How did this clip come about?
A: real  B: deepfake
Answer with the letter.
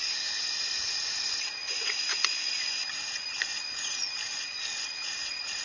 B